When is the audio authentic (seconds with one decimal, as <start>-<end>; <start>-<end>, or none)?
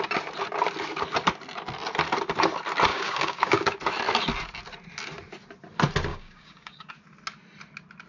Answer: 0.0-2.9; 3.8-6.1; 6.9-8.1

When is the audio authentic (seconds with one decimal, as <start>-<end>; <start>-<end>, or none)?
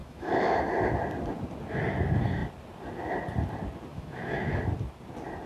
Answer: 0.7-3.9; 4.6-5.5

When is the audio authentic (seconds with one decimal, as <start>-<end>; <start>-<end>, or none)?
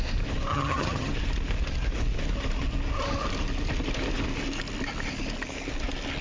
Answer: 0.0-0.5; 1.1-6.2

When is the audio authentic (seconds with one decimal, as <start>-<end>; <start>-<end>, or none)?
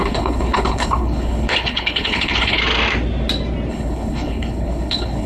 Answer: 2.6-3.7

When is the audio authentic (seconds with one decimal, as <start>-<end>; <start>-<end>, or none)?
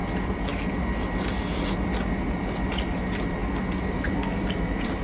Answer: 0.0-3.0; 3.4-3.9